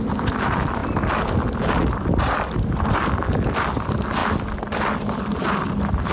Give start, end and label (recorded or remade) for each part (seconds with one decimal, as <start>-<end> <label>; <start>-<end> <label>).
0.0-6.1 recorded